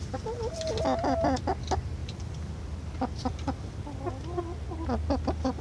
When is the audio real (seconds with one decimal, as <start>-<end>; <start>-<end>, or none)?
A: 0.0-5.6